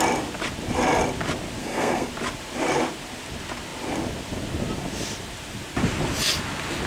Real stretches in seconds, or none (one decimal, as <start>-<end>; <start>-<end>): 0.0-1.6; 2.1-6.9